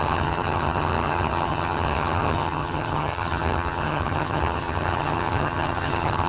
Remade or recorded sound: remade